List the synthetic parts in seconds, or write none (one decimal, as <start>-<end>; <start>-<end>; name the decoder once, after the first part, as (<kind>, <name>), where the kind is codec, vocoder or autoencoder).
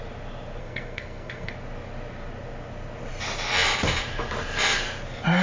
0.6-1.5 (codec, SNAC)